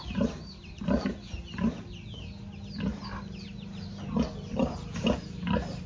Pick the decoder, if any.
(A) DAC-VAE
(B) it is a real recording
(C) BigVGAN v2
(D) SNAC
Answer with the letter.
B